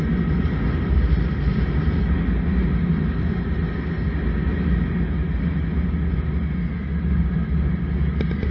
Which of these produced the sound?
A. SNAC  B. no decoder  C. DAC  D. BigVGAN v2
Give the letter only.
B